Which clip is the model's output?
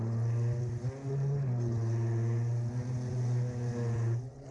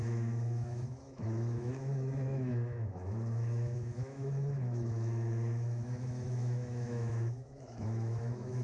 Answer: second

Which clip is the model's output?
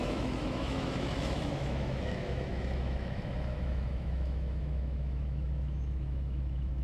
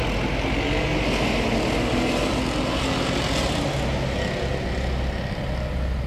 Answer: first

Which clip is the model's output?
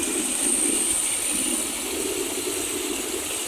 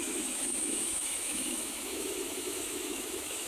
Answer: second